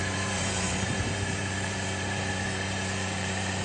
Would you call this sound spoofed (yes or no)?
yes